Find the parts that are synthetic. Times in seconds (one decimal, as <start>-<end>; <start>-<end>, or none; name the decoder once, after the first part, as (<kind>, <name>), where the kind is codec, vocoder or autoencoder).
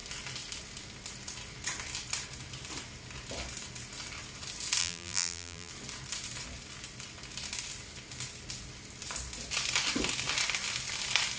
4.8-5.7 (vocoder, BigVGAN v2)